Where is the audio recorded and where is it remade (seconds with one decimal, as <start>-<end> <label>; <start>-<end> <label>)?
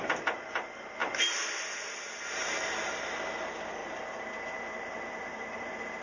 0.0-6.0 recorded